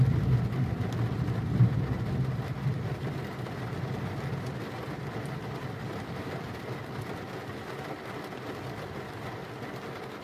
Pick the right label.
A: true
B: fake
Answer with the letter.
A